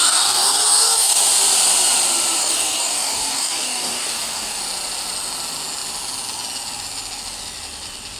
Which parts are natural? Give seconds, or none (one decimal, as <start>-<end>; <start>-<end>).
1.2-2.4; 4.6-8.2